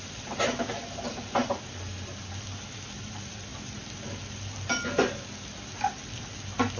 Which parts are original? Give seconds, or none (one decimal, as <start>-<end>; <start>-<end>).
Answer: 0.0-6.8